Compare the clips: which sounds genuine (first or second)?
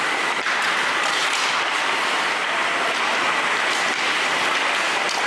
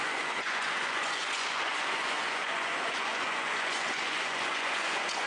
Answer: first